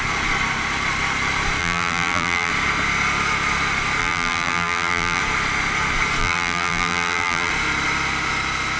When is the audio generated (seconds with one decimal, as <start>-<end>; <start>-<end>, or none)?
1.6-2.5; 4.0-5.2; 6.2-7.5